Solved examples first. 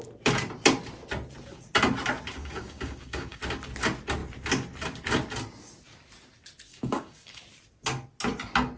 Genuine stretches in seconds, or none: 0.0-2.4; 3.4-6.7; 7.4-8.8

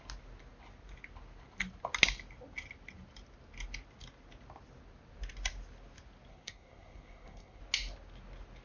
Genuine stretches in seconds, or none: 0.0-6.3; 7.6-8.6

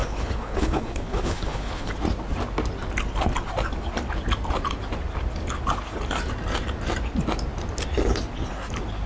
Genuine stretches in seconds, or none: 1.9-9.1

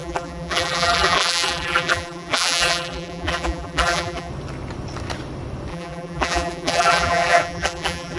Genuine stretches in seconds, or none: 4.3-5.7

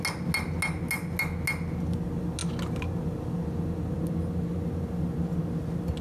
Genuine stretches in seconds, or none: 0.0-6.0

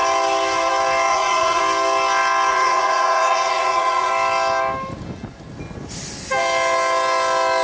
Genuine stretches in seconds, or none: 0.0-1.1; 1.6-2.5; 4.1-7.6